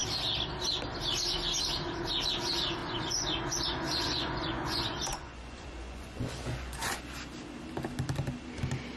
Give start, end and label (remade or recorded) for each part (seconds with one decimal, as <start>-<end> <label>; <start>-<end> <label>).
0.0-2.8 recorded; 2.8-7.0 remade; 7.0-9.0 recorded